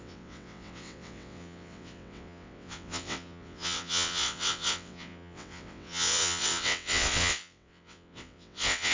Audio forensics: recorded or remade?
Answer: remade